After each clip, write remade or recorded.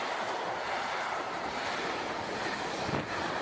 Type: recorded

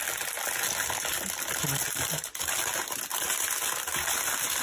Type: recorded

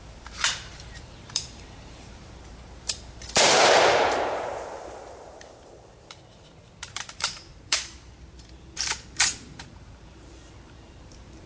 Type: remade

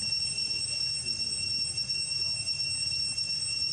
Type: recorded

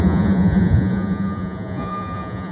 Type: remade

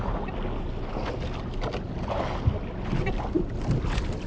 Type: recorded